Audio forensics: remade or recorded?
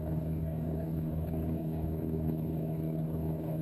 remade